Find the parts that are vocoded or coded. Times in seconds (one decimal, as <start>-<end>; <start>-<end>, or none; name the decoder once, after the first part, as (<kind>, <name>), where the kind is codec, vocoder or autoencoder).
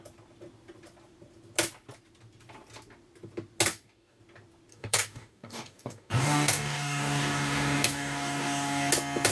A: 3.7-4.2 (codec, DAC); 4.7-8.9